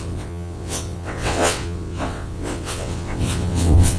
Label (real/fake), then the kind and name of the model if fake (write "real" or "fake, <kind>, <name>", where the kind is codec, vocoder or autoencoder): fake, vocoder, WaveNeXt